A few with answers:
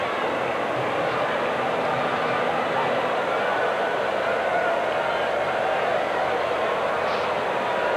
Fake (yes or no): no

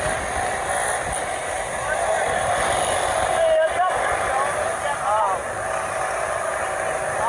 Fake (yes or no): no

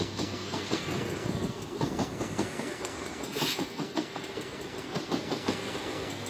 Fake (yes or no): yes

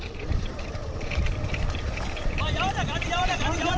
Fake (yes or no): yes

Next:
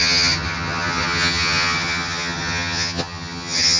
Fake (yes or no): yes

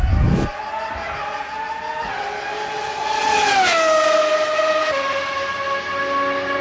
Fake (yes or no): no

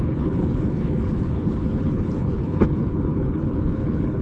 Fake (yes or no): yes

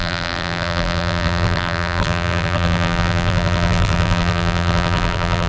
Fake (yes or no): yes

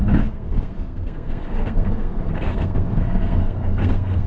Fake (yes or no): yes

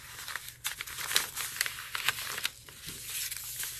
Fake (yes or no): no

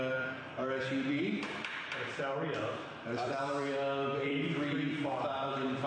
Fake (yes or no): yes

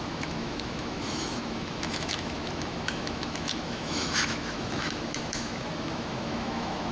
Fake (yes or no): yes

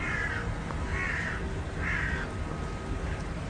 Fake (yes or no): no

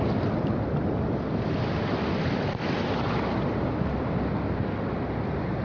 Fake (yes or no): no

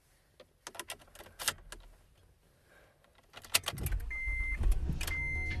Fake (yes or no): no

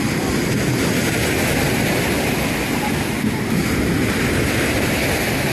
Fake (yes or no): no